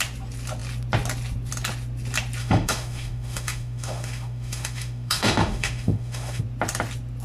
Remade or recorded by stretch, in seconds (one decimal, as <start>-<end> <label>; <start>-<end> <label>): 0.0-2.4 recorded; 2.4-6.4 remade; 6.4-7.2 recorded